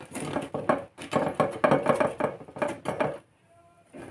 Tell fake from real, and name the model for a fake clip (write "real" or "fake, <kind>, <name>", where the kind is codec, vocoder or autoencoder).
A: real